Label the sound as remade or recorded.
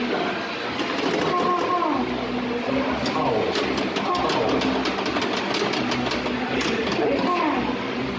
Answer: recorded